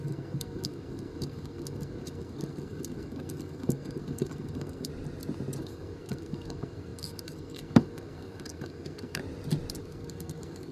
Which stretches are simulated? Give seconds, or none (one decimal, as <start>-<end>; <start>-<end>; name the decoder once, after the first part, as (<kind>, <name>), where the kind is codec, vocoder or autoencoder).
0.0-4.9 (codec, SNAC); 5.6-9.2; 9.8-10.7